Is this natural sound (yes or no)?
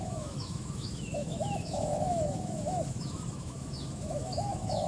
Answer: no